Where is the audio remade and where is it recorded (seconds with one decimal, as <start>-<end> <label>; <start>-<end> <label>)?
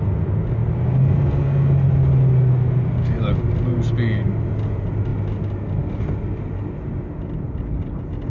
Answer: 0.0-8.3 recorded